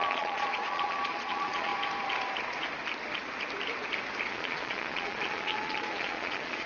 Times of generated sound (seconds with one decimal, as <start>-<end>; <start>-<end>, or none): 0.0-1.7; 4.3-6.7

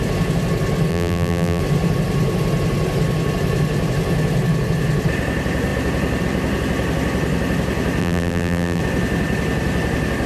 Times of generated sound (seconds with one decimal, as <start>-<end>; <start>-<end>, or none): 0.9-1.6; 8.0-8.8

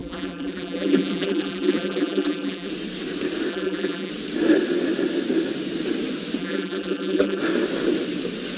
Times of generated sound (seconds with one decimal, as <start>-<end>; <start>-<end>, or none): 0.0-2.7; 3.5-4.1; 6.4-7.4

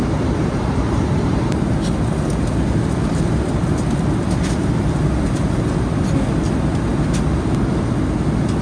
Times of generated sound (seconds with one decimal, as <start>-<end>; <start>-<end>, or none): 0.0-1.9; 3.0-4.1

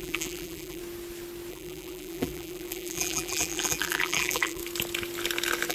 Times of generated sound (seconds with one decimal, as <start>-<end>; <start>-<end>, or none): 0.0-0.8; 1.5-4.6